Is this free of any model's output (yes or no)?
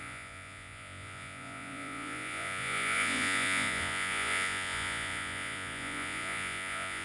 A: no